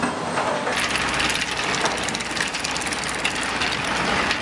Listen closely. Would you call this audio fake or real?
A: real